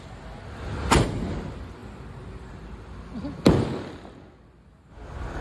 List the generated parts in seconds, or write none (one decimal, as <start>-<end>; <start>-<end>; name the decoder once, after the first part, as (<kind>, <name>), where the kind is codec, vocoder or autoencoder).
none